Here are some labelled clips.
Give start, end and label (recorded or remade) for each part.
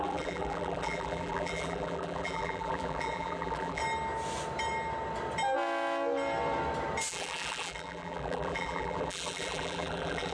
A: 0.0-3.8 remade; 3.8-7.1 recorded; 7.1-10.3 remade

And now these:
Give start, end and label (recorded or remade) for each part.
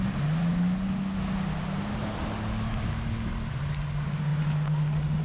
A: 0.0-5.2 recorded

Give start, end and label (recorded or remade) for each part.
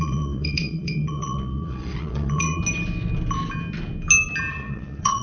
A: 0.0-2.6 remade; 2.6-4.5 recorded; 4.5-5.2 remade